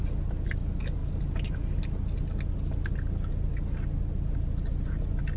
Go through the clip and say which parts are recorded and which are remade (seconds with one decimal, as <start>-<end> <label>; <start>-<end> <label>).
0.0-5.4 recorded